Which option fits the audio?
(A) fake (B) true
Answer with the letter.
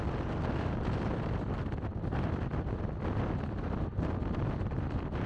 B